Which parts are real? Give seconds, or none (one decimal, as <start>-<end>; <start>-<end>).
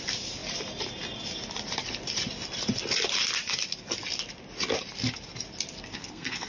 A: 0.0-5.9